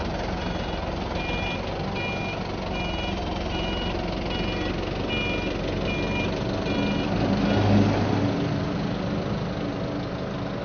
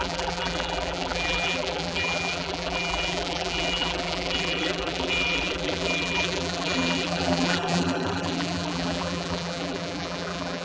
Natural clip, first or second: first